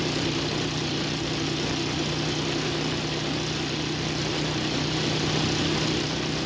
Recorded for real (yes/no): yes